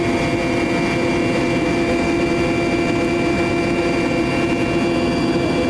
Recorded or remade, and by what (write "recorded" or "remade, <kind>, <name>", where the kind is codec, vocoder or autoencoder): recorded